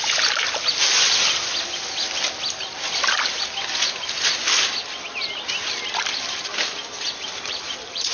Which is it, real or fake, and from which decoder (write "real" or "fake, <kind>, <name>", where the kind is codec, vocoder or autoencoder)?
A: real